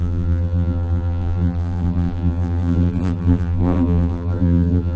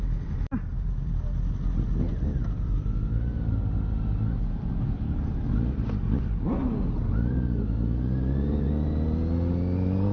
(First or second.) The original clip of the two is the second